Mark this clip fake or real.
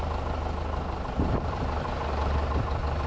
real